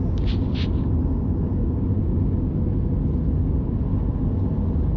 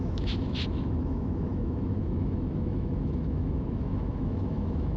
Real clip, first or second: first